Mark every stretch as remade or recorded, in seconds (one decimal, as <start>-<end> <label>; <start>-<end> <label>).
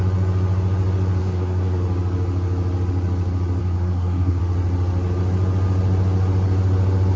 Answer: 0.0-1.2 recorded; 1.2-1.8 remade; 1.8-3.6 recorded; 3.6-4.4 remade; 4.4-7.2 recorded